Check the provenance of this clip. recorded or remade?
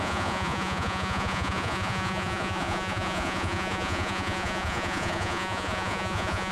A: remade